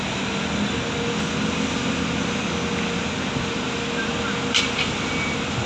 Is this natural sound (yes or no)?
yes